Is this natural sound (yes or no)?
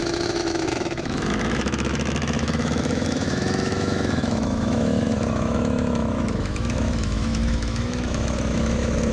no